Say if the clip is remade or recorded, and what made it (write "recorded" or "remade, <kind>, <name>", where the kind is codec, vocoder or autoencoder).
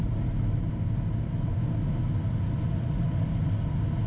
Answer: recorded